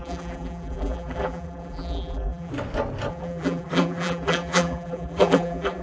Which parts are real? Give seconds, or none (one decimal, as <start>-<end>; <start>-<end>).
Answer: 2.5-3.1